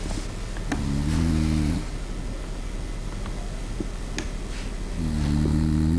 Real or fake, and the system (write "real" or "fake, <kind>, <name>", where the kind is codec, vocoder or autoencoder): real